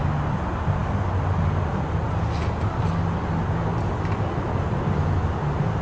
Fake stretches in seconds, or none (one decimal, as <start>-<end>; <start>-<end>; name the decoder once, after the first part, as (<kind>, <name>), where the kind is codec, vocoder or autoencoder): none